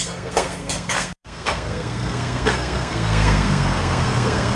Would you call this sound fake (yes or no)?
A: yes